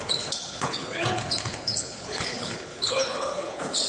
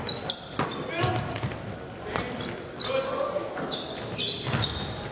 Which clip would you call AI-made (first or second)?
first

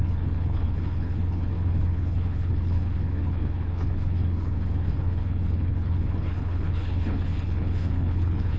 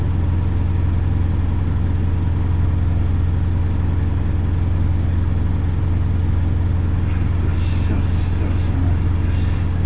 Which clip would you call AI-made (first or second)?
first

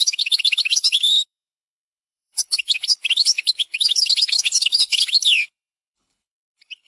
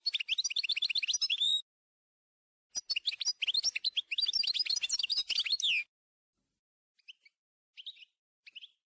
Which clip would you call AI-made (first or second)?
first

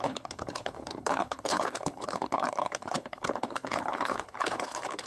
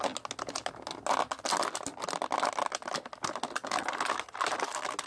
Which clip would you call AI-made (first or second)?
first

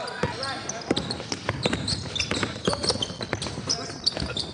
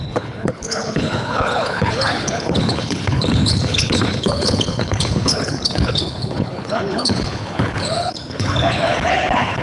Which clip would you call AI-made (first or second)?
second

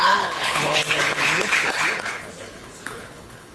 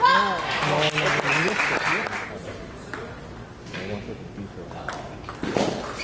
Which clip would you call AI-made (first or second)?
first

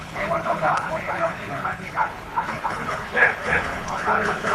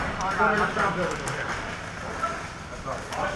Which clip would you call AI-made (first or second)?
first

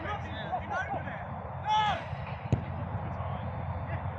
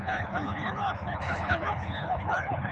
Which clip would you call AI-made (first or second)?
second